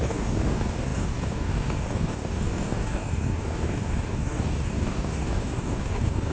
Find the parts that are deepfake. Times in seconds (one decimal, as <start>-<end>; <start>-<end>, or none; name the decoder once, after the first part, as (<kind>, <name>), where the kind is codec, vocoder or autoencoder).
0.0-6.3 (codec, DAC)

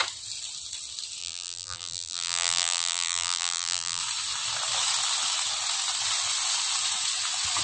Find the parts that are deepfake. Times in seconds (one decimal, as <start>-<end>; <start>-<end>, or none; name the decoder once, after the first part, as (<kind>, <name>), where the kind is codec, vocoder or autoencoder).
1.2-4.0 (vocoder, BigVGAN v2)

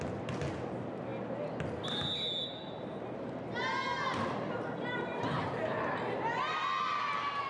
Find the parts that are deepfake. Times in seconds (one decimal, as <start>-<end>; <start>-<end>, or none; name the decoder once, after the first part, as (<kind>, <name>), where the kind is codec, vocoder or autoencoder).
none

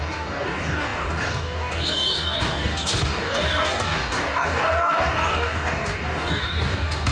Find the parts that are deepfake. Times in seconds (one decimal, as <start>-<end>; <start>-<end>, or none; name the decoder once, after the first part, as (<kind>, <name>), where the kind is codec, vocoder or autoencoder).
0.0-7.1 (codec, DAC)

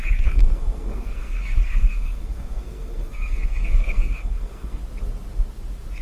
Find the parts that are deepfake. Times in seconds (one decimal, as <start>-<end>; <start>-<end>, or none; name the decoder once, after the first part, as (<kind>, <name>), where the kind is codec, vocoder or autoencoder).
0.0-4.8 (codec, SNAC)